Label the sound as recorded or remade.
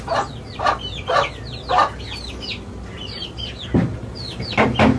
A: recorded